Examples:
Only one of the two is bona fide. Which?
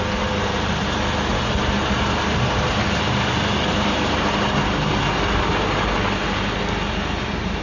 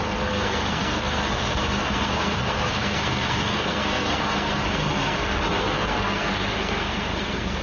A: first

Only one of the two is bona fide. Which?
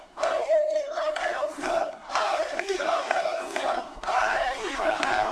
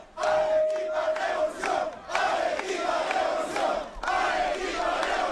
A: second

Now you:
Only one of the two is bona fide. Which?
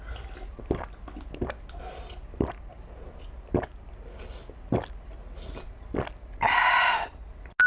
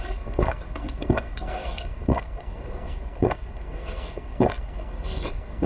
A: first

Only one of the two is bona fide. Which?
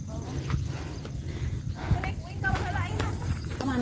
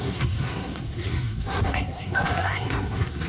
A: first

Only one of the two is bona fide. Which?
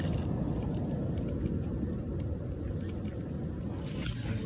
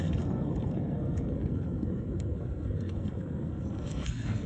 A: first